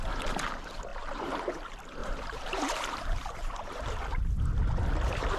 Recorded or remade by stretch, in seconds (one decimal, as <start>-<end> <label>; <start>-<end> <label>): 0.0-0.9 recorded; 0.9-1.5 remade; 1.5-2.0 recorded; 2.0-3.9 remade; 3.9-5.4 recorded